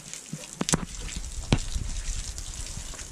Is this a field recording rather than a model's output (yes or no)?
yes